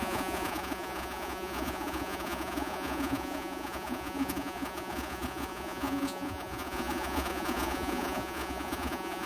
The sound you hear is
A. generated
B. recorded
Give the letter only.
A